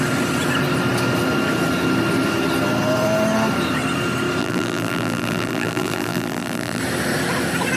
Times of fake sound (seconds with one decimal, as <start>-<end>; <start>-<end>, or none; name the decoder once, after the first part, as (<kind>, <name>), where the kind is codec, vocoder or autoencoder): 4.4-6.8 (vocoder, BigVGAN v2)